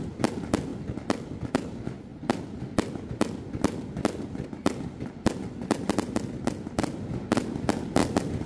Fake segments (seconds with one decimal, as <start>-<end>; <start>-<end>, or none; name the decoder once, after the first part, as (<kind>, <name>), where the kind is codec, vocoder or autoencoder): none